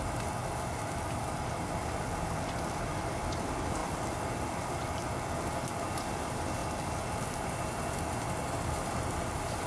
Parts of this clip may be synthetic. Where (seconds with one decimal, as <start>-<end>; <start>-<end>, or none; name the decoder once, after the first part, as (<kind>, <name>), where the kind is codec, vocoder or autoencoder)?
0.4-1.1 (vocoder, BigVGAN v2); 1.8-3.3; 3.8-4.5; 6.6-9.7